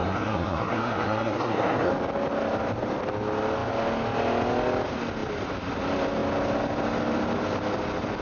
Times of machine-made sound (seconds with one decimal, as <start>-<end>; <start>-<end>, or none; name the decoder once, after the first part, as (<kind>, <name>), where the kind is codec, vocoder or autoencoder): 0.0-1.9 (codec, SNAC)